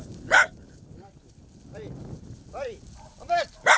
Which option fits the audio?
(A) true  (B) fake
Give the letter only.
A